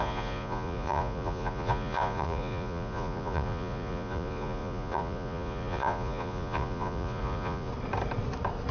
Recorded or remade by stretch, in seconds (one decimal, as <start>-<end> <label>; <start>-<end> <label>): 0.0-7.7 remade; 7.7-8.7 recorded